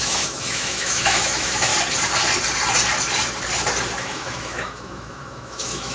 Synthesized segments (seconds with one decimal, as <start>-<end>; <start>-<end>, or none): 0.0-1.7; 4.0-5.9

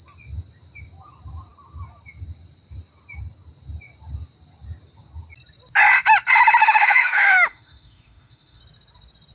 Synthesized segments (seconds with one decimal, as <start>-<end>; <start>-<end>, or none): 6.6-8.6

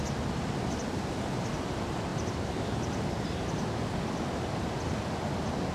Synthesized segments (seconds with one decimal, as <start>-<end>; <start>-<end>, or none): none

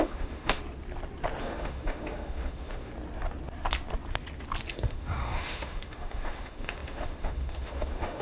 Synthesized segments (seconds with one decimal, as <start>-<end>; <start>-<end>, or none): 0.0-0.6; 1.4-2.9; 4.7-8.2

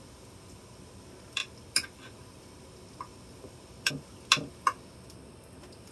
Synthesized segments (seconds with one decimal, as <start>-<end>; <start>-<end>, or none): none

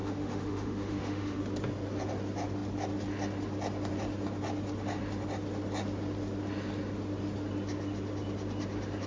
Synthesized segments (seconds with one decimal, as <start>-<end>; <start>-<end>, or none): 0.0-1.4

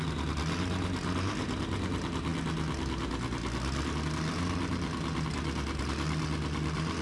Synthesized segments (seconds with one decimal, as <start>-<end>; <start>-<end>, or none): none

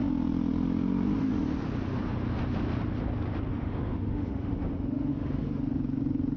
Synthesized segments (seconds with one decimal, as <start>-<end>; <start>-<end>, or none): 3.5-5.6